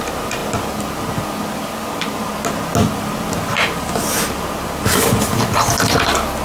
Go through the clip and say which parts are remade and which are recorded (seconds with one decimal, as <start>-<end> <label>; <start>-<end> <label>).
0.0-6.4 recorded